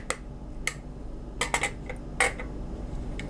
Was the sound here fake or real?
real